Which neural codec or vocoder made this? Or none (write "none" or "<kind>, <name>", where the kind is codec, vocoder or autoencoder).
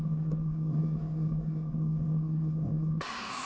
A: codec, SNAC